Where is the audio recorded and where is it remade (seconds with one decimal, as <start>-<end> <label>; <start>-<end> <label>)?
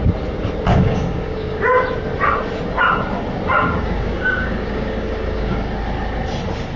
0.0-0.7 recorded; 0.7-1.6 remade; 1.6-3.6 recorded; 3.6-5.7 remade; 5.7-6.8 recorded